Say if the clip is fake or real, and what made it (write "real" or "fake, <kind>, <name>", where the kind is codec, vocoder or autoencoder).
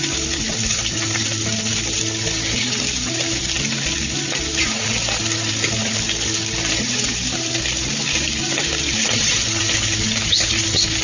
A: real